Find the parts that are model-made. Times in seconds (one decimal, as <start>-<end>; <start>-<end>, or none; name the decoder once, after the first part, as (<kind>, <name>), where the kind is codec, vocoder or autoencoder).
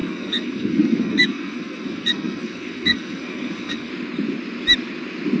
0.0-3.9 (codec, SNAC)